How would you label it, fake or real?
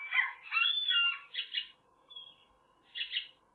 real